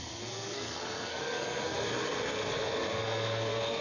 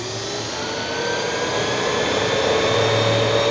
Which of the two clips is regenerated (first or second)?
first